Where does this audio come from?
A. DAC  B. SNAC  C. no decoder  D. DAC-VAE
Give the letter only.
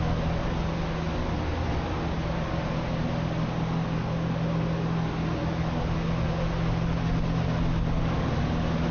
C